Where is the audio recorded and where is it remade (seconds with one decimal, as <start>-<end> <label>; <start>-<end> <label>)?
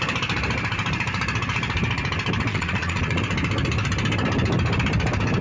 0.0-2.5 recorded; 2.5-3.2 remade; 3.2-5.4 recorded